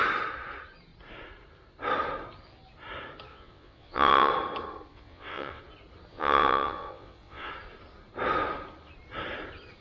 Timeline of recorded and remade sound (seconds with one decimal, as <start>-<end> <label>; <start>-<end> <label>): 0.0-3.3 recorded; 3.3-4.3 remade; 4.3-4.9 recorded; 4.9-5.6 remade; 5.6-6.1 recorded; 6.1-7.5 remade; 7.5-9.8 recorded